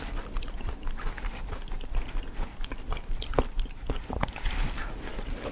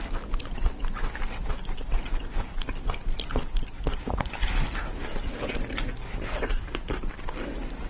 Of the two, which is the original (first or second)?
second